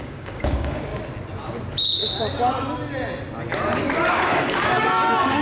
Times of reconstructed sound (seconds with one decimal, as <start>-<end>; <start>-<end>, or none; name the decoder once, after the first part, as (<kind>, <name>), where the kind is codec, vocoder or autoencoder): 0.0-0.9 (codec, DAC); 4.1-5.4